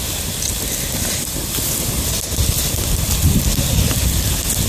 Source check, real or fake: real